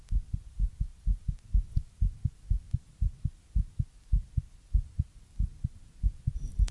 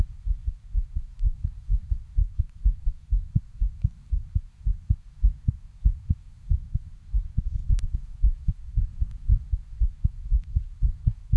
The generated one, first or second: second